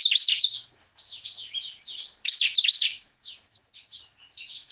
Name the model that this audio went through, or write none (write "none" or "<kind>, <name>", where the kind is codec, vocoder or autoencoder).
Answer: autoencoder, DAC-VAE